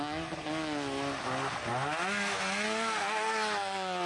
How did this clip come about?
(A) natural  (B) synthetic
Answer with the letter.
A